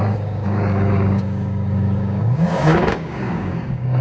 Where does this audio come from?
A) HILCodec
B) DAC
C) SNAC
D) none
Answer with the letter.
B